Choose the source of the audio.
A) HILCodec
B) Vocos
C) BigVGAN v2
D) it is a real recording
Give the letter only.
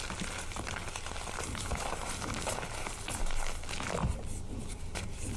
D